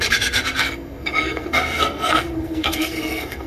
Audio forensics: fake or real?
fake